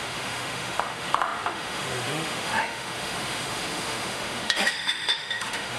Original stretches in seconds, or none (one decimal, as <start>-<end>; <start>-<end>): none